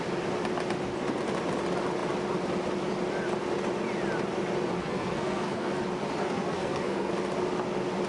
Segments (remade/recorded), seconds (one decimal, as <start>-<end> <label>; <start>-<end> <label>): 0.0-4.8 recorded; 4.8-5.8 remade; 5.8-6.2 recorded; 6.2-7.1 remade; 7.1-8.1 recorded